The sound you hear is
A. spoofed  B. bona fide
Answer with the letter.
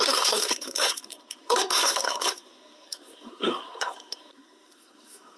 A